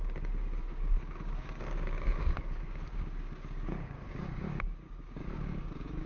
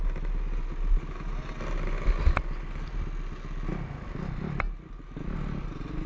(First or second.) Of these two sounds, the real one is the second